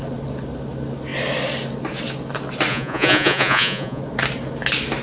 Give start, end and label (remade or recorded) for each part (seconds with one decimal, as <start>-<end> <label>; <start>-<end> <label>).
0.0-2.7 recorded; 2.7-4.0 remade; 4.0-5.0 recorded

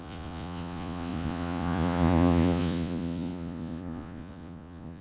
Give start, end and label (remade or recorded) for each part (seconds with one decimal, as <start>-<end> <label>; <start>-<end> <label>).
0.0-5.0 remade